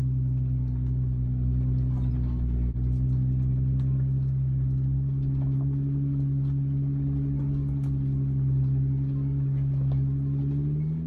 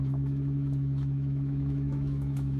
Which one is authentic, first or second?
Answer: first